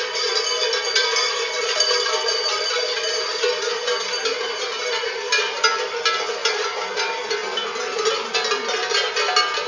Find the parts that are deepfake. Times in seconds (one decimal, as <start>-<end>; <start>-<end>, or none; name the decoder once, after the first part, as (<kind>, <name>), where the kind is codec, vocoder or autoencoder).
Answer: 1.2-5.6 (vocoder, BigVGAN v2); 6.4-6.9